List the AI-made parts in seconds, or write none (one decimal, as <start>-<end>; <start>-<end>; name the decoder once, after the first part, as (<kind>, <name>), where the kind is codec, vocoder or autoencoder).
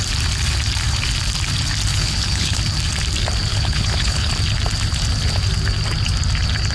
1.9-2.6 (codec, HILCodec); 3.5-4.3